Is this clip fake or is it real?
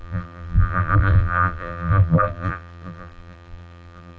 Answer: fake